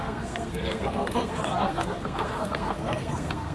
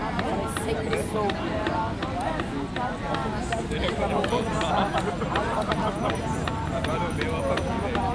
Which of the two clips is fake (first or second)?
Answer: first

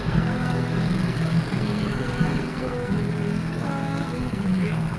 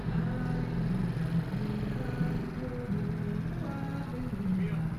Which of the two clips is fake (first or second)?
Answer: first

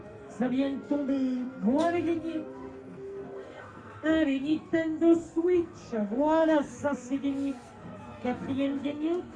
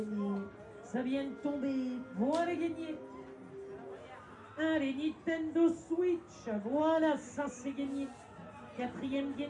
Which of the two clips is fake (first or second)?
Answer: first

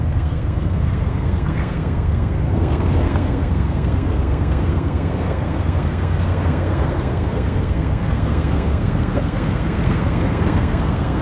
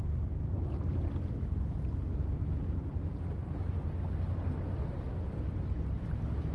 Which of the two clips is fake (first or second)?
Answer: first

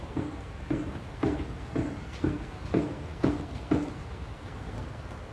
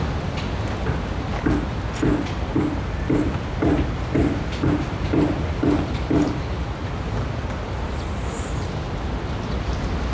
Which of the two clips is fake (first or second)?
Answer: first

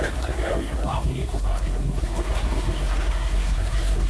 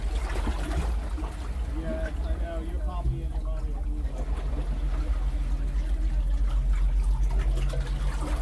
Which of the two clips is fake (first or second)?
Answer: first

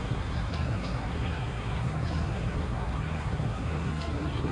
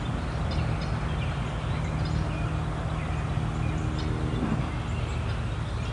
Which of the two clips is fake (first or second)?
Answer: first